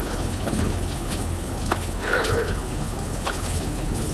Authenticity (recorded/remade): remade